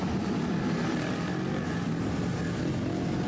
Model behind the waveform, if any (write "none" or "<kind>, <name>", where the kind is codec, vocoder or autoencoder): none